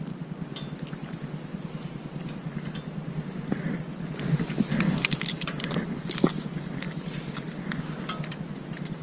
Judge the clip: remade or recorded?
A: recorded